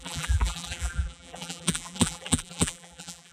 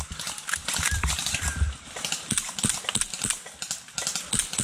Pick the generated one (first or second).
first